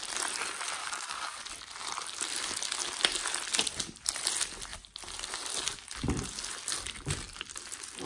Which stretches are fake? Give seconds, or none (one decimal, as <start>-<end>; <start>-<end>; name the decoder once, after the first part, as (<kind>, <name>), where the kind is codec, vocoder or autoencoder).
0.8-1.4 (codec, DAC)